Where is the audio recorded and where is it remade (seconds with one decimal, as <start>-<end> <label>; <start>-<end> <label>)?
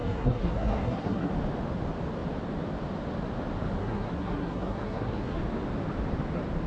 0.0-1.3 remade; 1.3-3.8 recorded; 3.8-5.4 remade; 5.4-6.7 recorded